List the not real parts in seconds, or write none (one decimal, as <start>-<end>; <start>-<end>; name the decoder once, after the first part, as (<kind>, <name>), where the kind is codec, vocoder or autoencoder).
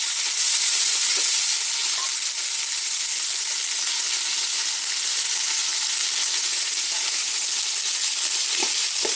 6.3-7.4 (vocoder, Vocos)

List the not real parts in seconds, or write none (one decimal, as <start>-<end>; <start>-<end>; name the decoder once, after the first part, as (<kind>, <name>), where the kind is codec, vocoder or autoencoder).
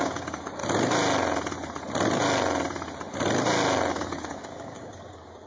0.0-0.6 (codec, DAC); 3.9-5.5